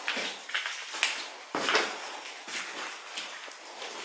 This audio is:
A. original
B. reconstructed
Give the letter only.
A